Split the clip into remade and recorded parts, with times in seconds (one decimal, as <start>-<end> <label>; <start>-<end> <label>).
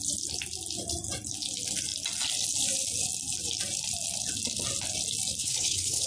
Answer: 0.0-5.4 recorded; 5.4-6.1 remade